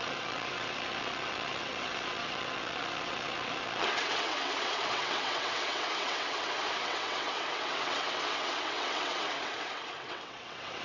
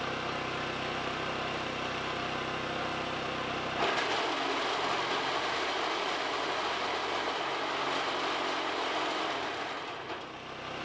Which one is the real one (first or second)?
second